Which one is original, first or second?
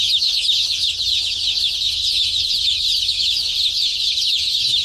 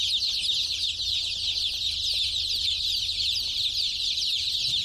second